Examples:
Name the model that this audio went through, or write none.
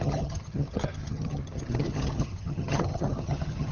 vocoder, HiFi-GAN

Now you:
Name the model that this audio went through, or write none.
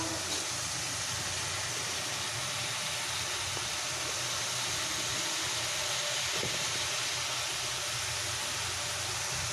none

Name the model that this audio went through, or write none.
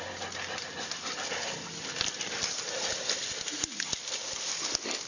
none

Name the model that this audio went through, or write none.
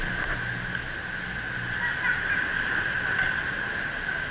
none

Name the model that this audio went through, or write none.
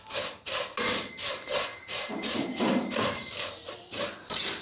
none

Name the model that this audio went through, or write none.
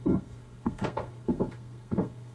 codec, SNAC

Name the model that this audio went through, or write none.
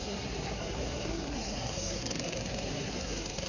codec, SNAC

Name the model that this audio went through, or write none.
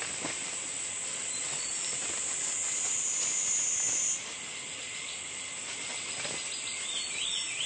none